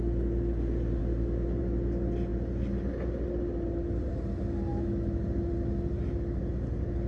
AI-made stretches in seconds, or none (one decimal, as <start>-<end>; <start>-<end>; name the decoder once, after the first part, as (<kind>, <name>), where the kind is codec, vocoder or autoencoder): 1.0-1.6 (autoencoder, DAC-VAE); 4.7-5.5